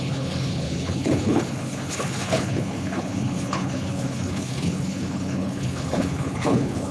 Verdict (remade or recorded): remade